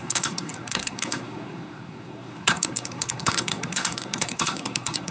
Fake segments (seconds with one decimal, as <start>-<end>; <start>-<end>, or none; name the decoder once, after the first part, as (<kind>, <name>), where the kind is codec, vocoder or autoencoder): 0.0-5.1 (codec, SNAC)